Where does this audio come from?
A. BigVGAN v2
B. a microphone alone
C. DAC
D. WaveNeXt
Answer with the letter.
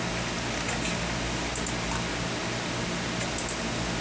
B